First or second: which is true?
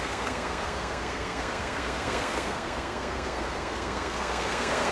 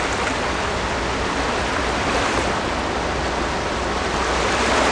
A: second